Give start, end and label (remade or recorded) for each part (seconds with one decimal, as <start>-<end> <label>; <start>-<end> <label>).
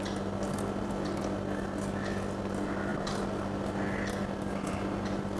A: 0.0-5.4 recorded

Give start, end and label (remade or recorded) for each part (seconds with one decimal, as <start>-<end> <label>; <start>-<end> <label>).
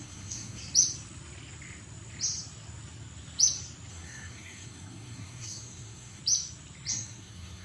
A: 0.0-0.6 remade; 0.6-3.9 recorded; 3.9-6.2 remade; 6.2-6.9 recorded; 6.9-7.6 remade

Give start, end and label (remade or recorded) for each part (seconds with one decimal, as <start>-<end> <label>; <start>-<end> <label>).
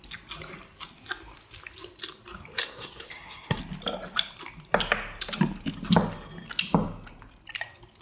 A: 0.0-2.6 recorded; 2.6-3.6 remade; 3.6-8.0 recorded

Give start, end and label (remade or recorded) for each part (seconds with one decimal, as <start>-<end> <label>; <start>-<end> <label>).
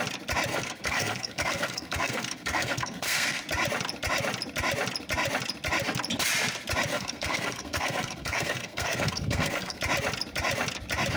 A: 0.0-0.5 recorded; 0.5-3.4 remade; 3.4-6.9 recorded; 6.9-9.8 remade; 9.8-11.2 recorded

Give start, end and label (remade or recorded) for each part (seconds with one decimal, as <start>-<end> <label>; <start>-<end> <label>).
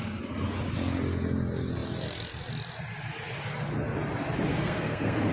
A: 0.0-4.5 recorded; 4.5-5.3 remade